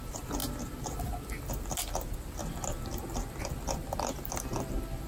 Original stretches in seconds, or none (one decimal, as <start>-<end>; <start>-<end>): 0.0-5.1